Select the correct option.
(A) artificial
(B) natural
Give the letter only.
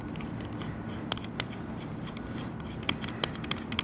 B